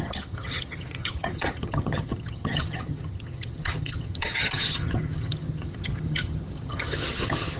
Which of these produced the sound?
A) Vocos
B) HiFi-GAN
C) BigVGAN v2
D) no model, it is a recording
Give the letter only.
B